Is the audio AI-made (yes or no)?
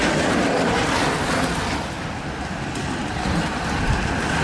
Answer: no